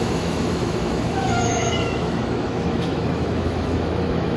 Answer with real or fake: fake